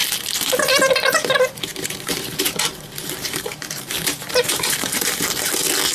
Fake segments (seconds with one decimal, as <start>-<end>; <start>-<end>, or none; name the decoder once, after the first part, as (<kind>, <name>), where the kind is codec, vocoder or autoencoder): 0.0-0.5 (vocoder, BigVGAN v2); 1.7-5.2